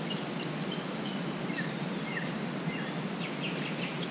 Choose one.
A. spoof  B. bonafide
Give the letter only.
B